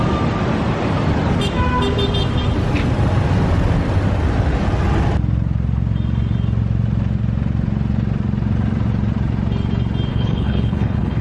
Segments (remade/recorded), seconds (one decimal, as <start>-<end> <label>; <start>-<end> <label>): 0.0-10.1 recorded; 10.1-11.2 remade